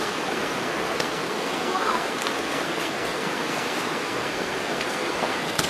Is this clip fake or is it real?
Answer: fake